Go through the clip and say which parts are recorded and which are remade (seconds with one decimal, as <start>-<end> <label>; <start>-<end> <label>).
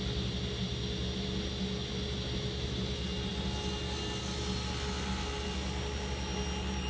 0.0-6.9 recorded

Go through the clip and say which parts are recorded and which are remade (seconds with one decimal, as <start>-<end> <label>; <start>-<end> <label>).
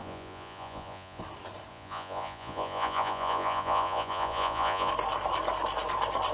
0.0-1.2 remade; 1.2-1.7 recorded; 1.7-4.9 remade; 4.9-6.3 recorded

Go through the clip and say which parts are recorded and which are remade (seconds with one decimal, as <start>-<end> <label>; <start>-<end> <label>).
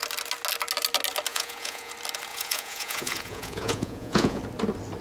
0.0-1.3 recorded; 1.3-1.9 remade; 1.9-2.3 recorded; 2.3-4.4 remade; 4.4-5.0 recorded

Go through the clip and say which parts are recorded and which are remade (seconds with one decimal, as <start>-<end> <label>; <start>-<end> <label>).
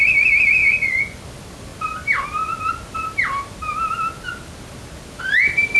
0.0-0.6 recorded; 0.6-1.2 remade; 1.2-5.8 recorded